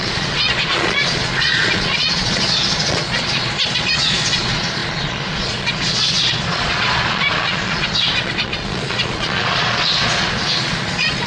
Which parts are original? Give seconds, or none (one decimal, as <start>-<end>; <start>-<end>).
none